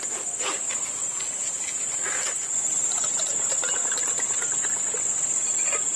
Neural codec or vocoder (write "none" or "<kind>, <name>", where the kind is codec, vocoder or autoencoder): none